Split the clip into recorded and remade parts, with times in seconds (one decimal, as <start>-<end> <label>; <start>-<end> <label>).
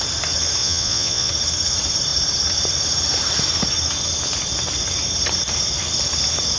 0.0-0.6 recorded; 0.6-1.3 remade; 1.3-6.6 recorded